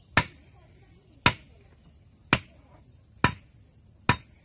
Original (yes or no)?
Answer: yes